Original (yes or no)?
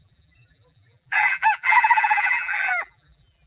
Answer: no